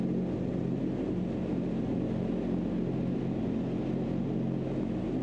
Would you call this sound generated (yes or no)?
no